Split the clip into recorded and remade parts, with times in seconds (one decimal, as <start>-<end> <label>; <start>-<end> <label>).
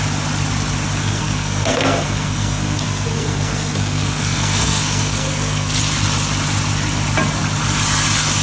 0.0-1.0 recorded; 1.0-5.8 remade; 5.8-8.4 recorded